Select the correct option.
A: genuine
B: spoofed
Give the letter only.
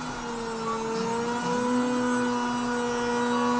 A